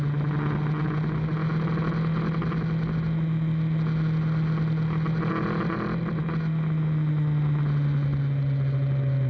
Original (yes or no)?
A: yes